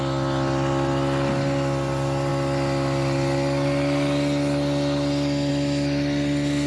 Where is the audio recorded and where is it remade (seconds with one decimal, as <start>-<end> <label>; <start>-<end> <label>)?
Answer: 0.0-6.7 recorded